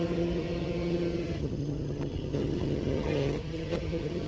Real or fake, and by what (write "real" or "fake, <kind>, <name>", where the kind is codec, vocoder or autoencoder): fake, vocoder, HiFi-GAN